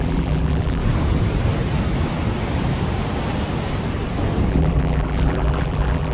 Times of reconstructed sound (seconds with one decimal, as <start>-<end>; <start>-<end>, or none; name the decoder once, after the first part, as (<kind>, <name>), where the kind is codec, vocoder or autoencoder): 0.0-0.8 (vocoder, BigVGAN v2); 4.5-6.1